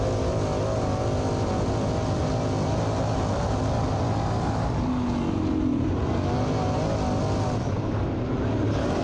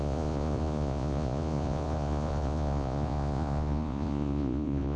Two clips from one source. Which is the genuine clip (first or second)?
first